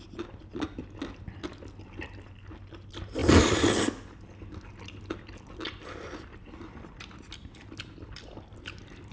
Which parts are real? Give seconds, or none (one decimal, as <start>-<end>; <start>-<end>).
0.0-9.1